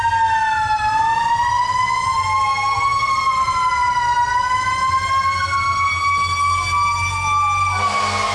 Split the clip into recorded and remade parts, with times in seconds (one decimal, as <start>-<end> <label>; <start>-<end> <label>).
0.0-8.3 recorded